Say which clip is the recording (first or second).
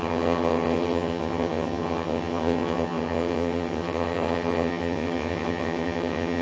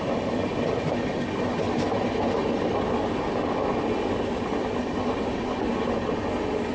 second